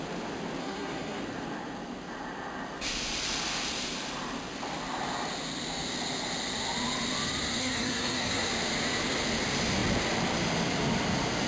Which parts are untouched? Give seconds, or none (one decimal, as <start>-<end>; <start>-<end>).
0.0-0.6; 1.2-7.6; 8.5-11.5